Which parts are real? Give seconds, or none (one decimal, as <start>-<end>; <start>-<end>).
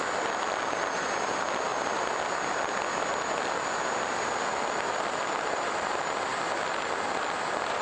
0.0-7.8